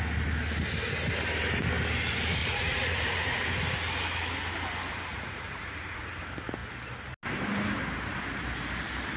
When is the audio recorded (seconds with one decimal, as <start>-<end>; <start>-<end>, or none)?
0.0-2.4; 3.4-5.1; 6.1-9.2